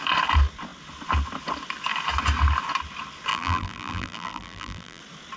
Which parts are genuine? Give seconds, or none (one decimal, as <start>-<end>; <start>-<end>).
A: 0.0-3.3; 5.0-5.4

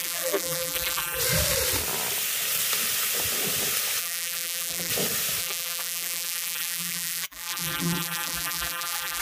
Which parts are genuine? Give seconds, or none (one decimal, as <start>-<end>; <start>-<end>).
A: 1.2-4.0; 4.9-5.4

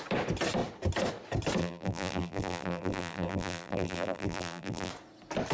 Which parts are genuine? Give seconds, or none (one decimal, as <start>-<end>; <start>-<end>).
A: 0.0-1.6; 4.9-5.5

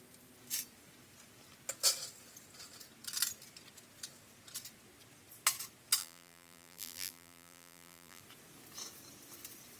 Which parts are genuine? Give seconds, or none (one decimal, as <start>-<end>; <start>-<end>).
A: 0.0-6.0; 8.2-9.8

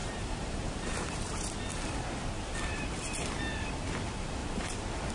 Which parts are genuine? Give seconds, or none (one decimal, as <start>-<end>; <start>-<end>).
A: 1.5-4.4